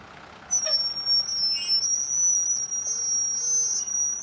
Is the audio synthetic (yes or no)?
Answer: no